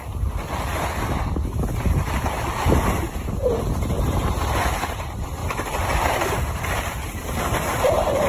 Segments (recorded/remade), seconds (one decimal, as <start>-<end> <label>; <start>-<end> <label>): 0.0-5.4 recorded; 5.4-6.6 remade; 6.6-8.3 recorded